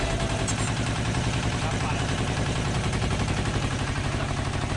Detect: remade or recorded remade